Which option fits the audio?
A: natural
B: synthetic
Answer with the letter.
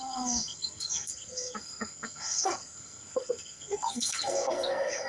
B